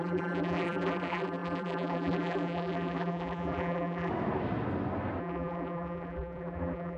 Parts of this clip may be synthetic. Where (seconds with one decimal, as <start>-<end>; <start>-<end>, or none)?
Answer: 0.0-4.1; 5.2-7.0